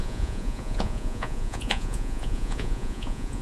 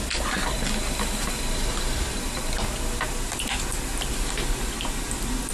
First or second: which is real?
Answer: second